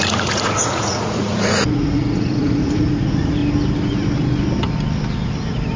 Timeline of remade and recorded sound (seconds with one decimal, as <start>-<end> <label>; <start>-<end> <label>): 0.0-3.4 remade; 3.4-5.8 recorded